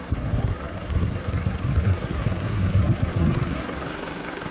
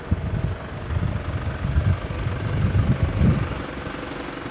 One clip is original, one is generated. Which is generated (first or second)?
first